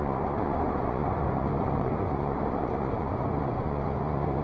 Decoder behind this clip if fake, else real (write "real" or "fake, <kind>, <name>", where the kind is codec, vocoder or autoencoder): fake, vocoder, Vocos